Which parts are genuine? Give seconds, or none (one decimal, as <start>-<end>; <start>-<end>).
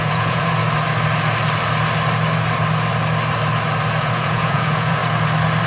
0.6-4.0; 5.0-5.7